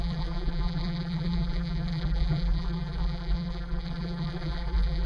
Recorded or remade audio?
remade